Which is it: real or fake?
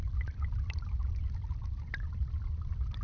fake